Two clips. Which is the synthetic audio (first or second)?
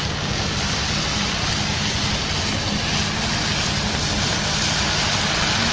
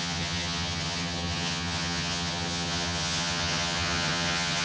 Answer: second